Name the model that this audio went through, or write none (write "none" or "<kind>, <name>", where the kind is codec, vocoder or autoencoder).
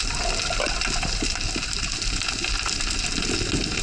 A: none